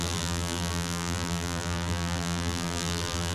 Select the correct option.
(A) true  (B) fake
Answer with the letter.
B